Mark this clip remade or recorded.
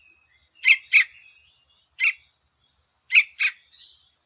recorded